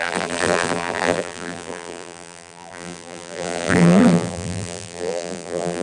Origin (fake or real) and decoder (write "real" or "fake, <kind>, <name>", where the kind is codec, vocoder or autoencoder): fake, vocoder, BigVGAN v2